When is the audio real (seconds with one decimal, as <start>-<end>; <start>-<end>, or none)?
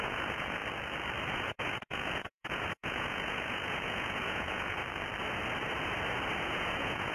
0.6-1.3; 4.8-6.4